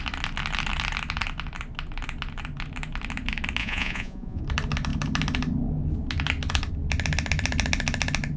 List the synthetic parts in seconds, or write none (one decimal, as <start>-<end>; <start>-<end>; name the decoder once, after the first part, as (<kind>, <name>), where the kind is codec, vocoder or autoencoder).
3.6-4.4 (vocoder, Vocos)